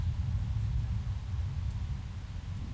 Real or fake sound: real